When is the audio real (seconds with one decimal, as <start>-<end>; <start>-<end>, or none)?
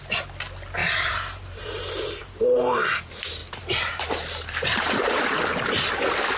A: 0.0-0.8; 2.8-3.4; 5.3-6.4